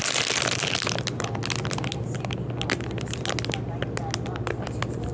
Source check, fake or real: real